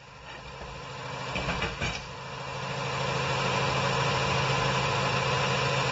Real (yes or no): yes